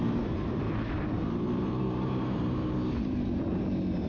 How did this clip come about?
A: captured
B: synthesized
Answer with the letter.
B